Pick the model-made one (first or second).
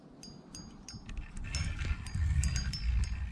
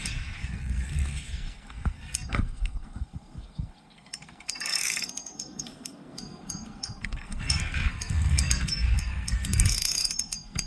second